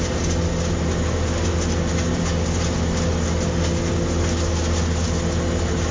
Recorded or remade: recorded